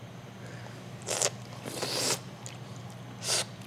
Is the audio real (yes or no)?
yes